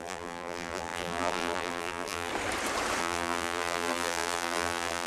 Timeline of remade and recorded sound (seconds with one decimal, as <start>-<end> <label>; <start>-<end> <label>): 0.0-2.3 remade; 2.3-3.0 recorded; 3.0-5.1 remade